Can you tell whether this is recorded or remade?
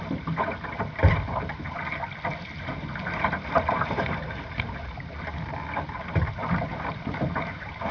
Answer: recorded